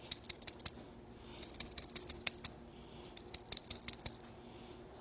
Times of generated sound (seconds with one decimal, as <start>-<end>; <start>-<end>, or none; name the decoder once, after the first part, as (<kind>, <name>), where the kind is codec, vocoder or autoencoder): 3.6-4.3 (vocoder, BigVGAN v2)